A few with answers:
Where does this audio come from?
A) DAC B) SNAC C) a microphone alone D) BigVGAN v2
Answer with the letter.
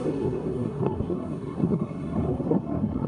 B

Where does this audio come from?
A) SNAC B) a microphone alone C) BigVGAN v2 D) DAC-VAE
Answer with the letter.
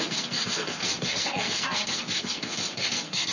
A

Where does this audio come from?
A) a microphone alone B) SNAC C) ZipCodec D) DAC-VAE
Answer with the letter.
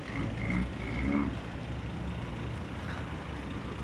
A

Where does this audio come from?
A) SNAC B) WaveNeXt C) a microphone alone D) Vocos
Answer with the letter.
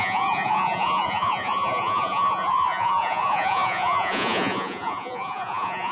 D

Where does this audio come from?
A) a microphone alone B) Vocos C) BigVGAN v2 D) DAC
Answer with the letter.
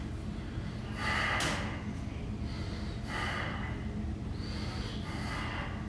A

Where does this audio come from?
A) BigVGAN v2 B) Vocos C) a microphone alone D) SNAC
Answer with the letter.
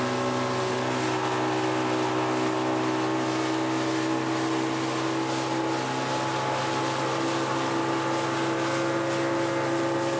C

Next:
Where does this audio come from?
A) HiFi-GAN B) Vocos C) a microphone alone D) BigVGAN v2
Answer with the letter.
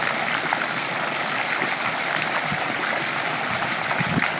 C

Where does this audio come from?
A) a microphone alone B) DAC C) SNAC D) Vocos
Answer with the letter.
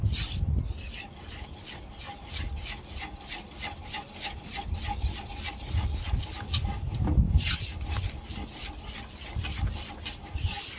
A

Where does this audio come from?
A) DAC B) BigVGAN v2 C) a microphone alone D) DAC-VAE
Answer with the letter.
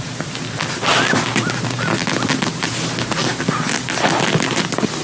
C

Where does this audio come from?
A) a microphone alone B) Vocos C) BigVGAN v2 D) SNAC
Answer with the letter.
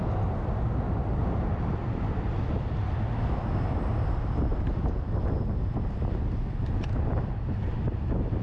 A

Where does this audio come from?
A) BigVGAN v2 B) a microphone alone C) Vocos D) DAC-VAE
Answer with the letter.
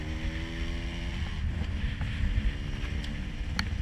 B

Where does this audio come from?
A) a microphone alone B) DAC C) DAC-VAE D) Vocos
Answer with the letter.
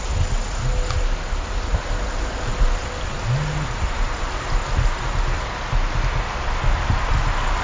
A